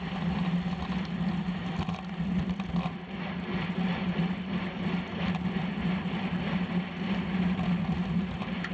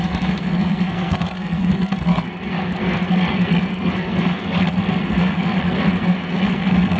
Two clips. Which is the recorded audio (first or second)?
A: first